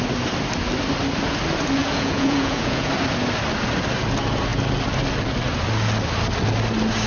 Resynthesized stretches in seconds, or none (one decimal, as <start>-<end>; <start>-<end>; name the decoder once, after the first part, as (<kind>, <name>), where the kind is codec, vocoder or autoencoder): 1.8-2.9 (vocoder, Vocos)